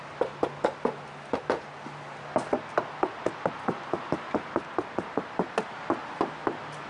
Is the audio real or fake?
real